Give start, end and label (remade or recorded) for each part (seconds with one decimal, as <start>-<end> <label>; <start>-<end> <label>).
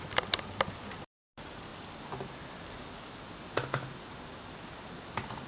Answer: 0.0-5.5 recorded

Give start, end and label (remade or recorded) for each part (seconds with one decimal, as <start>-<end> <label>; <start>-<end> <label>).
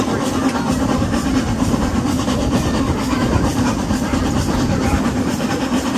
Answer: 0.0-1.9 recorded; 1.9-5.5 remade; 5.5-6.0 recorded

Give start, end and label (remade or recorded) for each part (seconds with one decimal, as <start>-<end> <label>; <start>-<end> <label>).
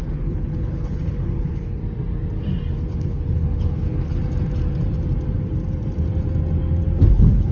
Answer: 0.0-1.8 remade; 1.8-2.9 recorded; 2.9-4.2 remade; 4.2-7.1 recorded; 7.1-7.5 remade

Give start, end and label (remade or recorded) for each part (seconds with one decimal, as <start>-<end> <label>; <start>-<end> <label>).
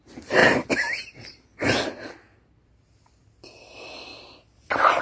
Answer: 0.0-5.0 recorded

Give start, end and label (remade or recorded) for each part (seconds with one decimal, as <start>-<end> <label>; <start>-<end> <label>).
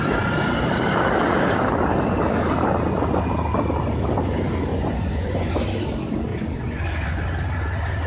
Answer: 0.0-4.7 recorded; 4.7-5.6 remade; 5.6-6.3 recorded; 6.3-7.2 remade; 7.2-8.1 recorded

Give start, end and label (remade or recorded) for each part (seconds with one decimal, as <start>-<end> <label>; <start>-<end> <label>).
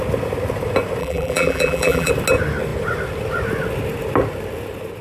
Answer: 0.0-1.0 recorded; 1.0-2.1 remade; 2.1-5.0 recorded